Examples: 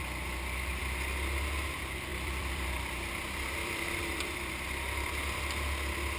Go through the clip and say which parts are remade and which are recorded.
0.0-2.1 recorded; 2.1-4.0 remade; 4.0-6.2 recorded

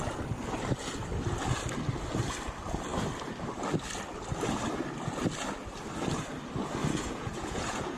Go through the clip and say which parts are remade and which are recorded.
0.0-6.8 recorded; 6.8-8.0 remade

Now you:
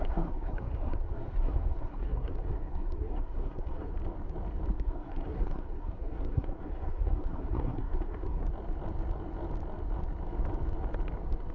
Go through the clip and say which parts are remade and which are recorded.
0.0-3.9 remade; 3.9-4.7 recorded; 4.7-8.4 remade; 8.4-11.5 recorded

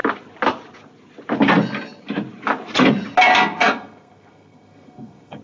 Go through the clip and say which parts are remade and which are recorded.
0.0-3.6 recorded; 3.6-5.4 remade